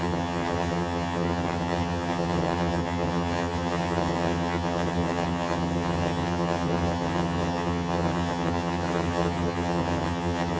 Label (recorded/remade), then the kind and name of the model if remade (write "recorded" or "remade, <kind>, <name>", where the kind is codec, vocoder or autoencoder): remade, vocoder, HiFi-GAN